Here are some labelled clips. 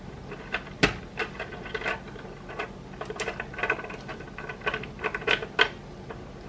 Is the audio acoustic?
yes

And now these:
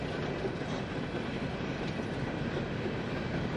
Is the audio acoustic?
yes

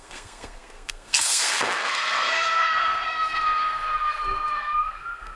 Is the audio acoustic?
no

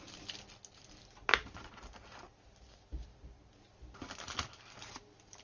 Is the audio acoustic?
yes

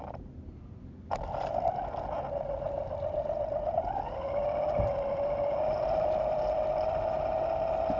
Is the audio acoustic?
yes